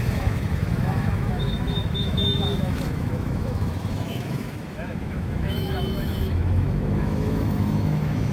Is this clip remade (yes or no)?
yes